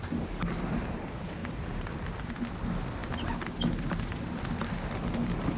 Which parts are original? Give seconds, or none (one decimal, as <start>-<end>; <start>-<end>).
0.0-1.4; 2.3-5.6